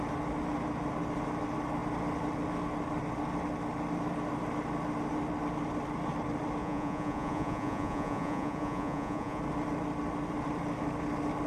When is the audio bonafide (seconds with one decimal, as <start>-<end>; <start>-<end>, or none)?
0.0-6.6; 9.4-11.5